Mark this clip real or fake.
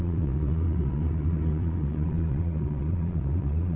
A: fake